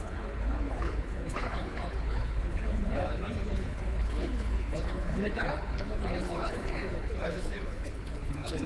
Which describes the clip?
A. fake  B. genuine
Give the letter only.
A